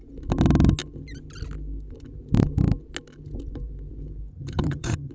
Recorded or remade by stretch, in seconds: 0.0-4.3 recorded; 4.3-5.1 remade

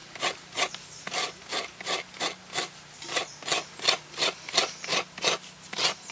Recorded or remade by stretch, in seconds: 0.0-6.1 recorded

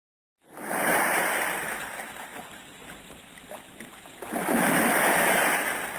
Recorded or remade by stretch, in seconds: 0.0-3.6 remade; 3.6-6.0 recorded

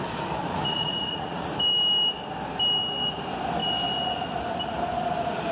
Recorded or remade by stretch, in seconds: 0.0-0.5 recorded; 0.5-1.5 remade; 1.5-5.5 recorded

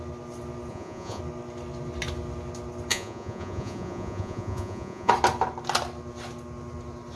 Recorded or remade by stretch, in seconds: 0.0-0.7 recorded; 0.7-1.2 remade; 1.2-2.9 recorded; 2.9-5.1 remade; 5.1-7.2 recorded

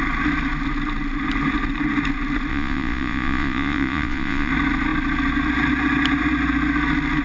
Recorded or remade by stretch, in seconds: 0.0-2.5 recorded; 2.5-4.5 remade; 4.5-7.2 recorded

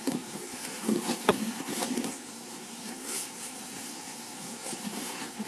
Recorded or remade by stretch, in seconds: 0.0-5.5 remade

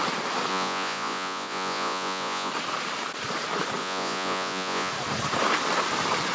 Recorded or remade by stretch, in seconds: 0.0-0.5 recorded; 0.5-2.5 remade; 2.5-3.8 recorded; 3.8-4.9 remade; 4.9-6.3 recorded